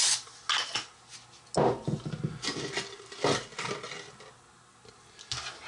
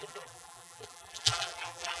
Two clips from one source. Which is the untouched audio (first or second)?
first